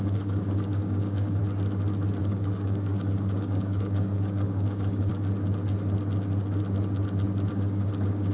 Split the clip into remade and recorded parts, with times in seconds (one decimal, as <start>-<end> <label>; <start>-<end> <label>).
0.0-1.4 remade; 1.4-2.2 recorded; 2.2-5.1 remade; 5.1-7.5 recorded; 7.5-8.3 remade